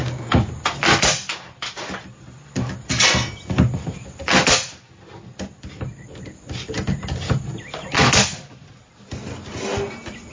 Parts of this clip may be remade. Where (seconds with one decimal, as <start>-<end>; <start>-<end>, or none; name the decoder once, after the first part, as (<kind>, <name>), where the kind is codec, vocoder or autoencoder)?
0.0-0.5 (codec, DAC)